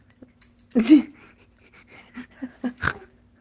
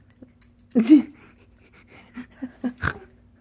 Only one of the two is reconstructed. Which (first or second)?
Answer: second